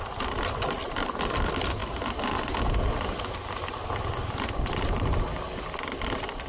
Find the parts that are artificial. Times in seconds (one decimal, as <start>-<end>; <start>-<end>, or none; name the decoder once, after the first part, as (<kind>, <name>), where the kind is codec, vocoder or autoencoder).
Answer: none